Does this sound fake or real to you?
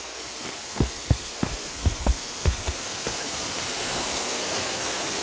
fake